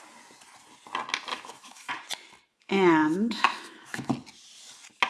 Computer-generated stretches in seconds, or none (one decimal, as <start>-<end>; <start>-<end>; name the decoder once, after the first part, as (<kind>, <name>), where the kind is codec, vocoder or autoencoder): 1.3-1.9 (autoencoder, DAC-VAE); 2.5-4.1